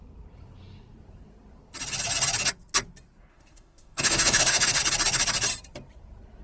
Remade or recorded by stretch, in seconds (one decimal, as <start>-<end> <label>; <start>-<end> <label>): 0.0-3.3 recorded; 3.3-4.8 remade; 4.8-6.4 recorded